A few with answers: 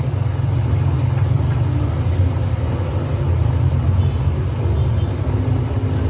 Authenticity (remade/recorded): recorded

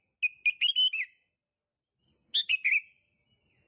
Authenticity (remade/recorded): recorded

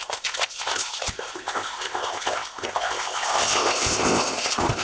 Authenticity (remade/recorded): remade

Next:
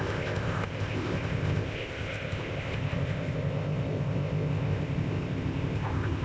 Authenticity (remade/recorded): remade